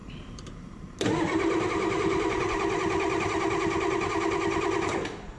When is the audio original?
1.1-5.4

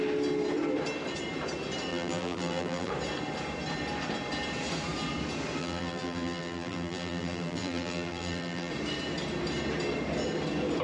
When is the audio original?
0.0-1.9; 2.9-5.6; 8.7-10.8